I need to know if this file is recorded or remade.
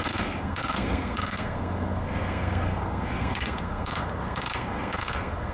remade